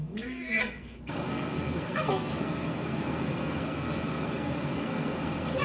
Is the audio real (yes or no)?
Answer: no